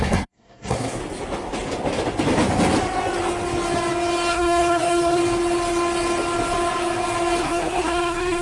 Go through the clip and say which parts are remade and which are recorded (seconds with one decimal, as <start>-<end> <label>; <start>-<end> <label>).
0.0-1.0 remade; 1.0-4.3 recorded; 4.3-5.2 remade; 5.2-7.4 recorded; 7.4-8.4 remade

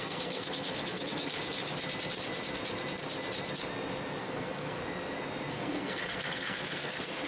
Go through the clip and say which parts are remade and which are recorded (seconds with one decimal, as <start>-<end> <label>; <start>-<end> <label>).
0.0-1.3 remade; 1.3-4.2 recorded; 4.2-4.8 remade; 4.8-5.5 recorded; 5.5-7.3 remade